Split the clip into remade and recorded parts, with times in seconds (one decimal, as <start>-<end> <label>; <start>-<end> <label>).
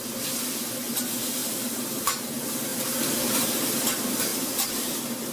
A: 0.0-1.4 recorded; 1.4-2.0 remade; 2.0-2.7 recorded; 2.7-3.3 remade; 3.3-4.3 recorded; 4.3-5.3 remade